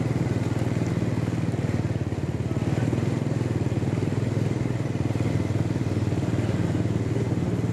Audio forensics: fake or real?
real